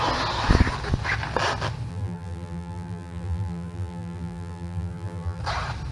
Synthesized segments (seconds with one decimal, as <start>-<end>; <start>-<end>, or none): 1.9-5.4